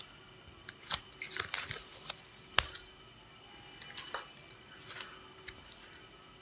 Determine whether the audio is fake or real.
real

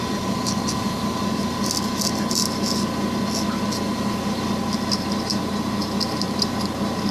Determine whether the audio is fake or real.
real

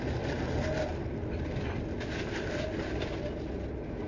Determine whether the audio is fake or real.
real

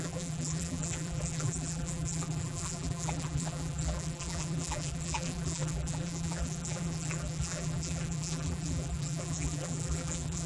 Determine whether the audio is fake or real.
fake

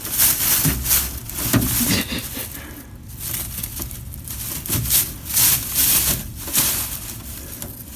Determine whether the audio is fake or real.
real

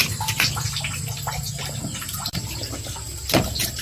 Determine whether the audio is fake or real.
fake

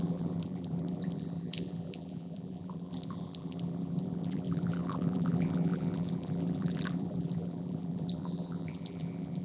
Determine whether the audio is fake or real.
fake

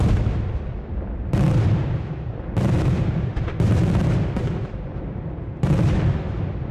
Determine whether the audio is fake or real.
fake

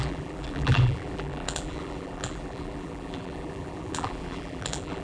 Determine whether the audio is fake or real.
fake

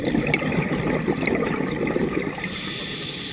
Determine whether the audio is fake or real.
real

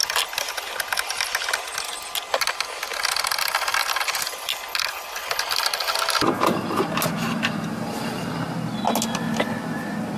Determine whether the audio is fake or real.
real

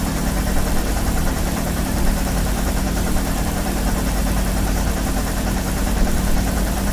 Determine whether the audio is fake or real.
fake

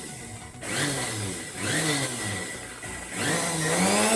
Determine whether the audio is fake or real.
real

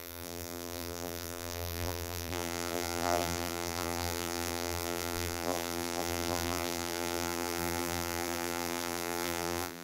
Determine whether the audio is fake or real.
fake